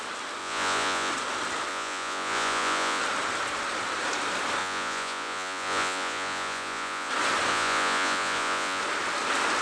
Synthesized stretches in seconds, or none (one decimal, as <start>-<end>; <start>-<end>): 0.4-1.1; 1.7-3.0; 4.6-7.1; 7.5-8.8